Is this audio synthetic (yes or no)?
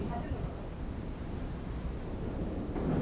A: yes